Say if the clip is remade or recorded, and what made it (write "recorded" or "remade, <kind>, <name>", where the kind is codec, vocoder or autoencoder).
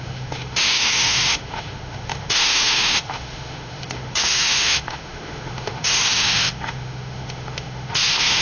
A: remade, autoencoder, DAC-VAE